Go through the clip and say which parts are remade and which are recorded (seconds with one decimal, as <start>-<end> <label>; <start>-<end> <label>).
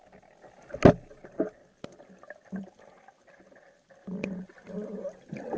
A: 0.0-5.6 recorded